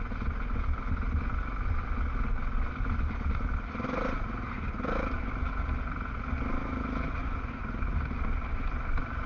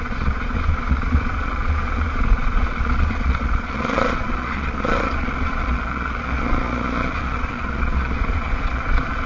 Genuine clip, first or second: first